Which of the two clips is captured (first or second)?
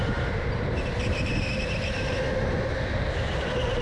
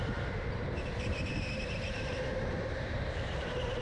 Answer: first